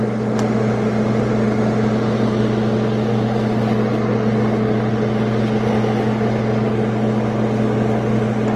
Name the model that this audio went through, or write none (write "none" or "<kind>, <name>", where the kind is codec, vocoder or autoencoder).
none